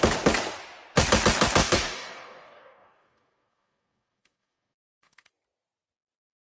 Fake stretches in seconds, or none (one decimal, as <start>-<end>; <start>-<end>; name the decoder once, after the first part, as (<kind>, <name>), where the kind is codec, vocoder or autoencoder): 1.6-5.3 (codec, DAC)